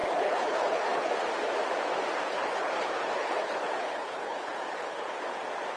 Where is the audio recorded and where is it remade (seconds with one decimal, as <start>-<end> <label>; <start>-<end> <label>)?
0.0-1.1 remade; 1.1-2.2 recorded; 2.2-5.2 remade; 5.2-5.8 recorded